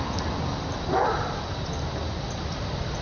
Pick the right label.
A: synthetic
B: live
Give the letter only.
B